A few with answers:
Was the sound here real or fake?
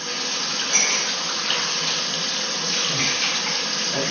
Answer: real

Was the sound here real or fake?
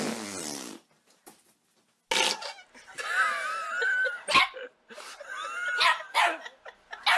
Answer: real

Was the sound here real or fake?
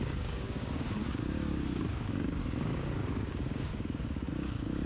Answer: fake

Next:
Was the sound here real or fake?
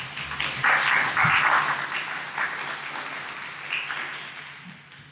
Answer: real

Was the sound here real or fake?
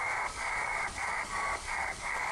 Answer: fake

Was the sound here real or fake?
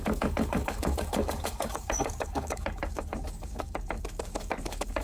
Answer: fake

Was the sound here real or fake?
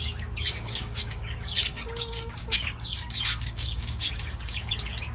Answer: fake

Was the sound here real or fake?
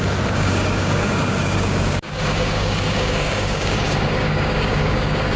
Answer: fake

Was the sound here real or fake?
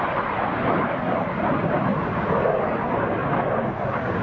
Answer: real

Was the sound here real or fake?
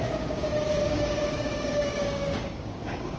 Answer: fake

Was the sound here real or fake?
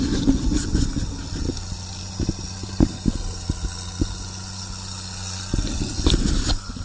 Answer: real